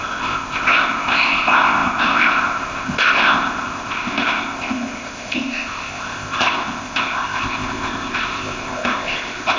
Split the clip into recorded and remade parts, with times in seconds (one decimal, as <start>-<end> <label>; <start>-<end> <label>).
0.0-9.6 remade